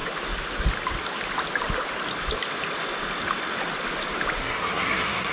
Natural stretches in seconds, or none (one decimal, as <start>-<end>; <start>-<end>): 0.0-4.4